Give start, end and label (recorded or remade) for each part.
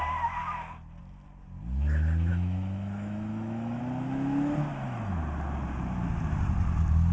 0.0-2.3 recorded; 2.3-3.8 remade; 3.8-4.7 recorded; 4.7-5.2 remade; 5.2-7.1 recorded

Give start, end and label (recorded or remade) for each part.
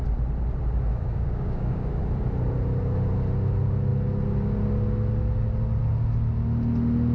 0.0-0.9 recorded; 0.9-2.0 remade; 2.0-7.1 recorded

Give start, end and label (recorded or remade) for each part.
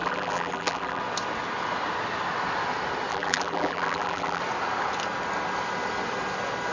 0.0-1.0 remade; 1.0-3.1 recorded; 3.1-4.4 remade; 4.4-6.7 recorded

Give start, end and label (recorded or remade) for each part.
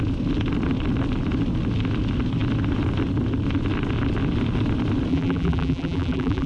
0.0-5.1 recorded; 5.1-6.5 remade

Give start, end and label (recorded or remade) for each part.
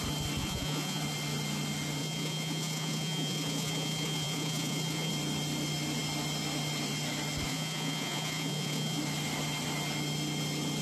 0.0-0.4 recorded; 0.4-1.0 remade; 1.0-2.0 recorded; 2.0-5.1 remade; 5.1-7.5 recorded; 7.5-9.0 remade; 9.0-10.8 recorded